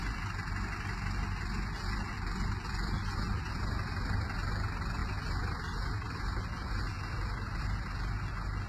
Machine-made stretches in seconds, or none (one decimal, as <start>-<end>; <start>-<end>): none